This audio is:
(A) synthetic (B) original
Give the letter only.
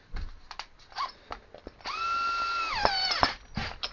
B